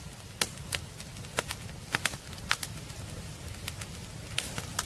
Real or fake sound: real